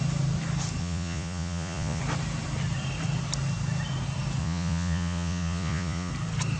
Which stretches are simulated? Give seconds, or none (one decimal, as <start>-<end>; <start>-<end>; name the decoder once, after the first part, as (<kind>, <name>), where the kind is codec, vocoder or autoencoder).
0.8-2.0 (vocoder, Vocos); 4.4-6.1